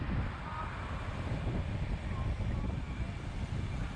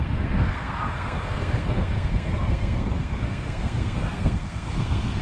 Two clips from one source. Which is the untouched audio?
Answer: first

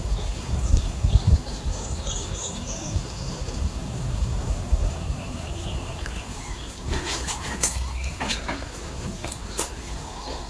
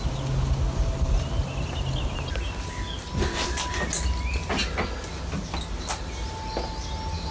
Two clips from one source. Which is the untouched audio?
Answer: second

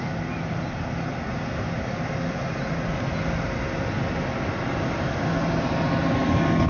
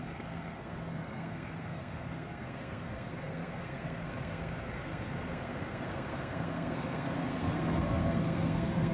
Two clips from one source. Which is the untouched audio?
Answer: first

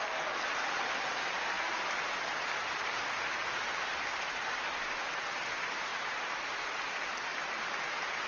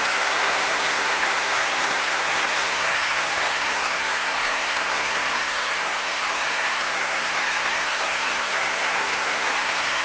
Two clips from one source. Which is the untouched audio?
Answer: first